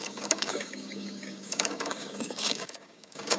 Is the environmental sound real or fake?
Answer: fake